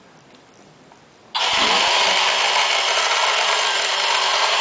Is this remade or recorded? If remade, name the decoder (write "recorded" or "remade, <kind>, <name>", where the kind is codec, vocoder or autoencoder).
remade, vocoder, BigVGAN v2